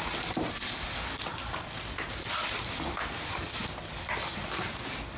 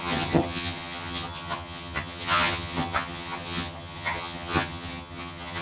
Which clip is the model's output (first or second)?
second